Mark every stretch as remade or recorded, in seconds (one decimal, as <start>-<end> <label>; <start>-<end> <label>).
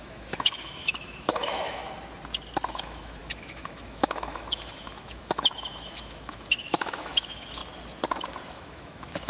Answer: 0.0-1.8 remade; 1.8-2.7 recorded; 2.7-7.6 remade; 7.6-8.5 recorded; 8.5-9.3 remade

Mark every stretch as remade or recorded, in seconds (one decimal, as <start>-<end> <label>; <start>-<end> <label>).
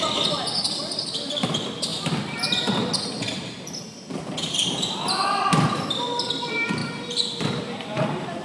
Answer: 0.0-1.9 remade; 1.9-2.6 recorded; 2.6-8.4 remade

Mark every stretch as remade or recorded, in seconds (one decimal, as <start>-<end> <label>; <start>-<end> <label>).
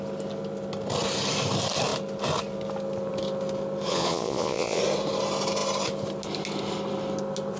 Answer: 0.0-3.9 recorded; 3.9-4.8 remade; 4.8-7.6 recorded